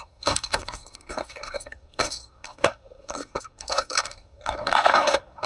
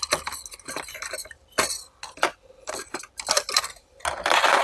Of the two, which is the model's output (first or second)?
first